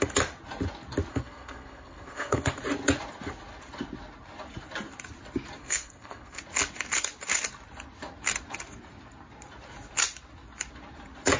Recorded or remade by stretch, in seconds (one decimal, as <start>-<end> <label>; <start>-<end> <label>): 0.0-1.1 recorded; 1.1-2.5 remade; 2.5-5.6 recorded; 5.6-6.4 remade; 6.4-11.4 recorded